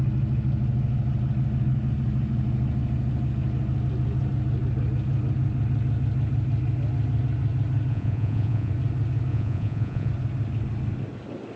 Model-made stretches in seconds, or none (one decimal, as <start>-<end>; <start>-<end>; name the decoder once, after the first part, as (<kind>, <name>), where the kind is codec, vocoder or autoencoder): 7.9-8.7 (vocoder, Vocos); 9.3-10.1

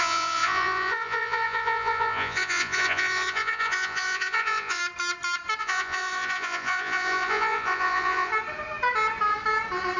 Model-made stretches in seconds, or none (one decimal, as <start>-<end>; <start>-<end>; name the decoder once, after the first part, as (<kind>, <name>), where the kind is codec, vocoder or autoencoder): 0.0-4.8 (vocoder, Vocos); 5.6-8.3